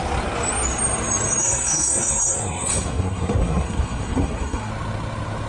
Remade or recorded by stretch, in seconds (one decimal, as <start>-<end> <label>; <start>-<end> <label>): 0.0-1.4 recorded; 1.4-4.7 remade; 4.7-5.5 recorded